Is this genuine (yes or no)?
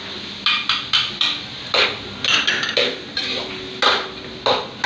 yes